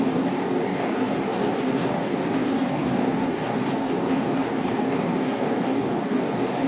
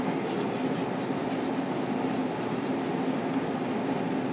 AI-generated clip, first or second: first